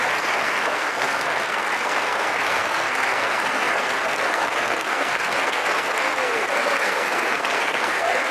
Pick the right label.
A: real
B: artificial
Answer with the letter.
B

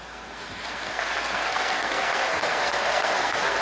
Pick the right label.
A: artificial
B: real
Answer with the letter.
A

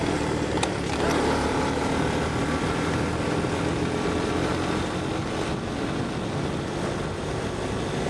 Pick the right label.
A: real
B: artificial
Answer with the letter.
A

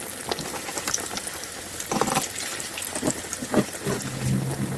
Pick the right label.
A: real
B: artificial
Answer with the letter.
A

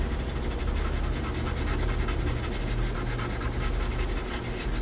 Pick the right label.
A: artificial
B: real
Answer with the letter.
B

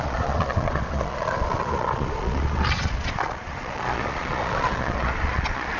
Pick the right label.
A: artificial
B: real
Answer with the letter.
A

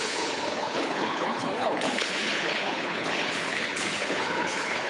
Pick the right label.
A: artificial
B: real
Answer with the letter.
A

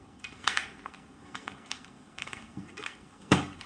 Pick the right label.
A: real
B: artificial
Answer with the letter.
B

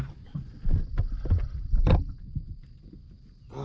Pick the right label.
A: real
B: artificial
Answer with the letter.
A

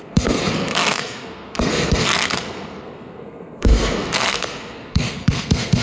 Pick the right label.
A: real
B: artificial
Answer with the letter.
B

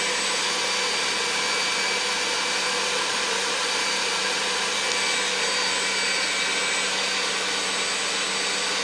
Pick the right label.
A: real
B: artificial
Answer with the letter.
A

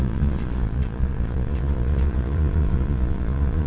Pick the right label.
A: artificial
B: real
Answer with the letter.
A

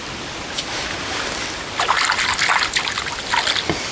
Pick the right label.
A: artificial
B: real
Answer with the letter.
B